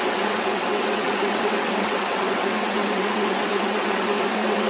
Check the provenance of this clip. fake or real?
fake